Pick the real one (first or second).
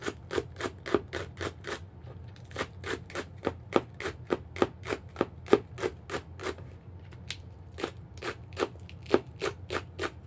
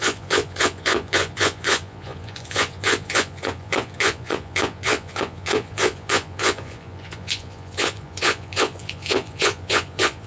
first